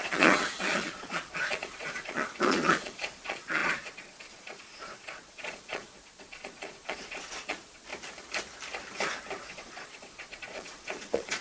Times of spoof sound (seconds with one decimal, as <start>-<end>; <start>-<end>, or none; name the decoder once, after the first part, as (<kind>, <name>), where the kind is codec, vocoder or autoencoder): 0.0-7.9 (vocoder, Vocos); 9.5-11.4